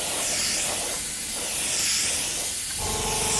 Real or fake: real